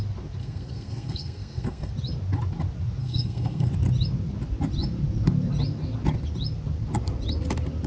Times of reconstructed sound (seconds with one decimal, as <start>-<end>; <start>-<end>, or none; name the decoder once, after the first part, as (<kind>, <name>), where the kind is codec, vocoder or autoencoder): 0.4-1.9 (codec, SNAC); 3.0-3.7